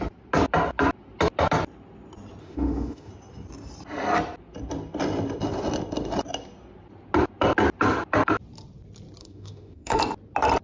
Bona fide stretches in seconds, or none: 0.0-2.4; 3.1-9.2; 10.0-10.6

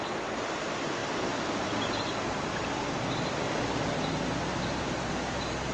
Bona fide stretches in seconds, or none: 0.0-5.7